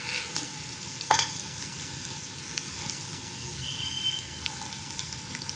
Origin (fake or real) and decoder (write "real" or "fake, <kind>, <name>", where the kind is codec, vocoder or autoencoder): fake, codec, SNAC